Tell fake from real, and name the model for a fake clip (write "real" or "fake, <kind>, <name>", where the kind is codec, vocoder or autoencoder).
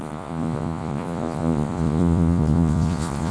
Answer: fake, vocoder, Vocos